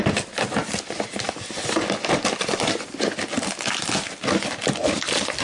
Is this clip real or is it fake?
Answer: real